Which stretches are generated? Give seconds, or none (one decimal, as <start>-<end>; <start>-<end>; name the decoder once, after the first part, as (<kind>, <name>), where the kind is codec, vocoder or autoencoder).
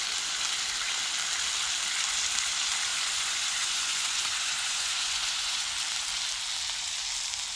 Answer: 2.9-5.6 (vocoder, Vocos)